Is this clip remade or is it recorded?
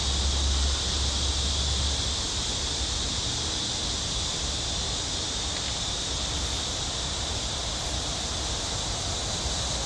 recorded